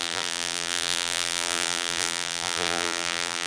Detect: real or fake fake